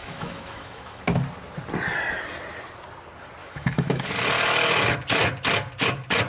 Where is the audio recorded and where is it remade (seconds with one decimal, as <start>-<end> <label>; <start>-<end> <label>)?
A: 0.0-1.0 remade; 1.0-3.4 recorded; 3.4-4.0 remade; 4.0-6.3 recorded